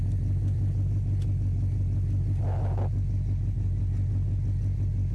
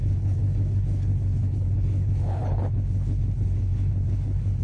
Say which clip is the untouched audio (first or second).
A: first